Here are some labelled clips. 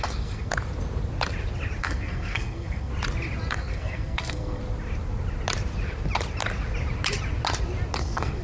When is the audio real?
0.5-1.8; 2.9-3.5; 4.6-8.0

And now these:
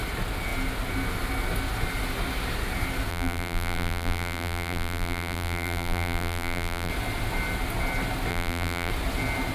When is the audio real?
0.0-3.1; 6.9-8.3; 8.9-9.5

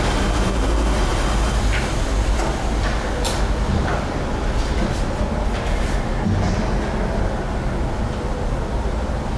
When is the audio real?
0.0-9.4

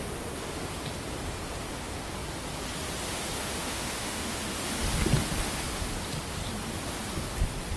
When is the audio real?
0.0-3.4; 4.4-7.8

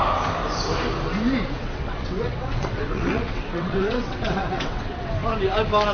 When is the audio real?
0.0-1.6; 5.1-5.9